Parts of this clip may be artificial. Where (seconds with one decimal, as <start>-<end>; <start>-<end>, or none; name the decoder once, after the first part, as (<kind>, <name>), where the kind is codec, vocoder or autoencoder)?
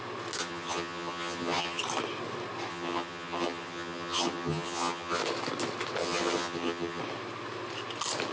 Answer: 0.4-1.8 (vocoder, HiFi-GAN); 2.7-5.2; 6.0-7.0